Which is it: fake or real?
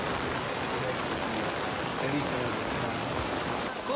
real